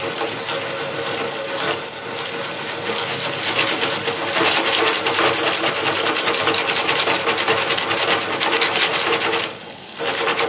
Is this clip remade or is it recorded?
recorded